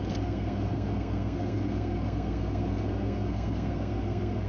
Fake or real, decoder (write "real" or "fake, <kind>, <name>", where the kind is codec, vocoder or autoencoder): fake, codec, SNAC